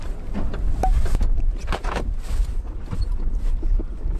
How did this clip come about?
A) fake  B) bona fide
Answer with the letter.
B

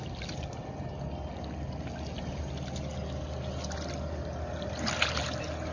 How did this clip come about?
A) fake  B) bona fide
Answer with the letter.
B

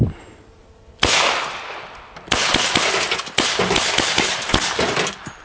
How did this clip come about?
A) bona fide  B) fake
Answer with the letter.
A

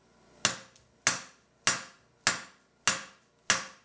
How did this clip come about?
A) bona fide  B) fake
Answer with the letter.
A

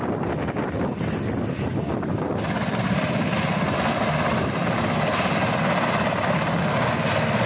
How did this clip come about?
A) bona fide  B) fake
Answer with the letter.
A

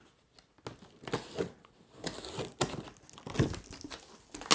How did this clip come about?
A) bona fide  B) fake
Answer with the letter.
A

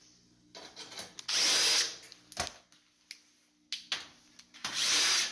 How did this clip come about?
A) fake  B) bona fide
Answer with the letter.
B